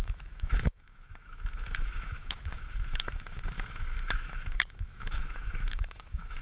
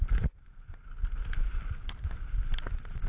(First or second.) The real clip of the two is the second